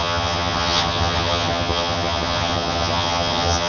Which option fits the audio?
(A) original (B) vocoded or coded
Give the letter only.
B